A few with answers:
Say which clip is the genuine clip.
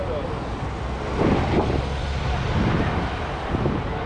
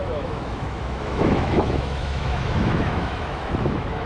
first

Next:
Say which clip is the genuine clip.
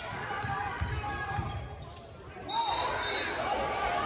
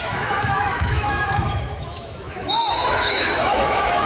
first